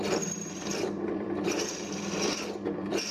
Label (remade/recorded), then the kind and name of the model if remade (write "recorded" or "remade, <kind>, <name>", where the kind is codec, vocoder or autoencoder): remade, vocoder, BigVGAN v2